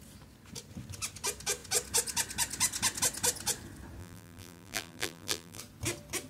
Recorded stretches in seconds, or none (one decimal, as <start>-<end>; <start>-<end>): 0.0-4.0; 5.6-6.3